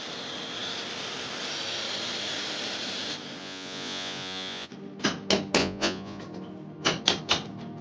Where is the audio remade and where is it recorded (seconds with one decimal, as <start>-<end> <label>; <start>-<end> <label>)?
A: 0.0-3.4 recorded; 3.4-4.7 remade; 4.7-5.6 recorded; 5.6-6.2 remade; 6.2-7.8 recorded